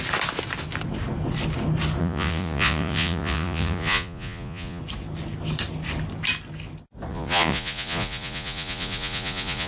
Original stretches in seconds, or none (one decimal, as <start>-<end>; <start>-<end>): 0.0-2.0; 4.8-7.1